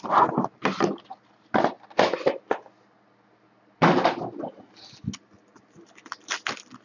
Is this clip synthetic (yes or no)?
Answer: no